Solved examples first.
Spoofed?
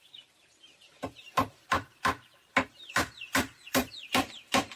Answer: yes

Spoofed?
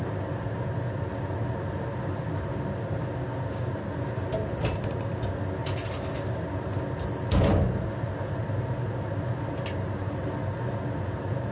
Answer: no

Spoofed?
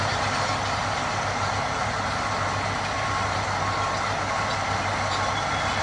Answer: no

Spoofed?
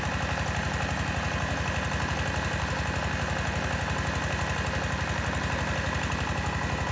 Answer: no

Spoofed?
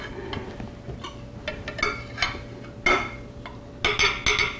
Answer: no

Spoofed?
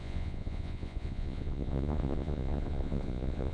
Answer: yes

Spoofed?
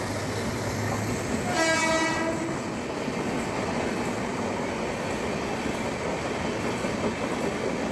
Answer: no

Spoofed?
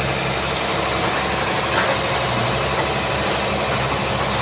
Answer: no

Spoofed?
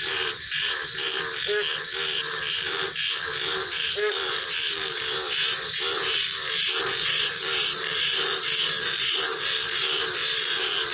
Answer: yes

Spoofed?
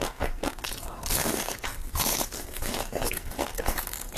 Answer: yes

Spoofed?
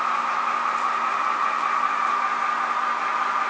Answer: no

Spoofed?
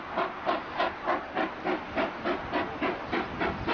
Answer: no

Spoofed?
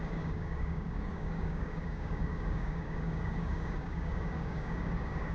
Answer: yes